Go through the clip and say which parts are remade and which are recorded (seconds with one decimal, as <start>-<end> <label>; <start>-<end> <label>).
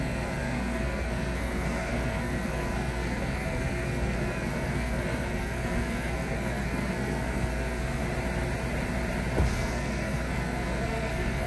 0.0-8.0 remade; 8.0-9.5 recorded; 9.5-11.5 remade